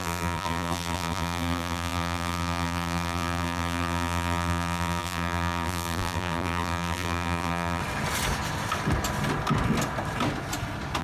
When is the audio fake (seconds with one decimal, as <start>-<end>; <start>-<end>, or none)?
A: 0.0-7.8